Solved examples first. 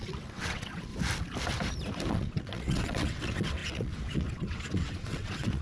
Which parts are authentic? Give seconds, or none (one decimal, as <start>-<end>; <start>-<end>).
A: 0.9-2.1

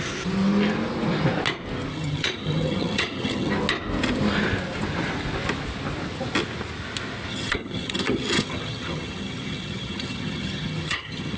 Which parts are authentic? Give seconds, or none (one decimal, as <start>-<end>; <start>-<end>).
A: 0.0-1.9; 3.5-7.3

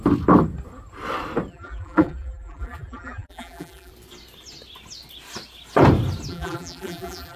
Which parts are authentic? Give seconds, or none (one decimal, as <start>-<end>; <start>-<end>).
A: 0.0-1.5; 3.9-6.3

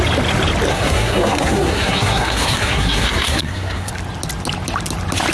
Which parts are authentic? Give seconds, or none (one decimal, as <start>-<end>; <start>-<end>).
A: 0.0-0.7; 3.9-5.3

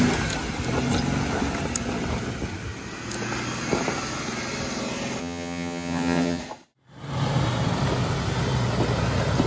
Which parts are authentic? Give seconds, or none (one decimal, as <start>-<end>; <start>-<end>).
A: 0.0-5.2; 6.4-9.5

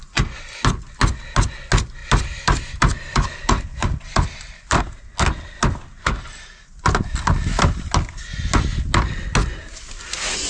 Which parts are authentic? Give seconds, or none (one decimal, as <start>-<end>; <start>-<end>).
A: 0.0-2.0; 4.8-5.9; 7.5-10.5

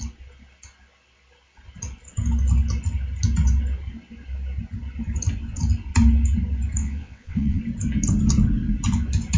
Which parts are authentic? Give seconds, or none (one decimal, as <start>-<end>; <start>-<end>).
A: 0.0-6.8; 7.6-9.4